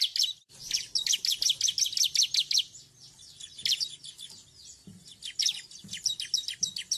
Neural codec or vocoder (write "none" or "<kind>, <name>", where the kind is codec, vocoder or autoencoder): none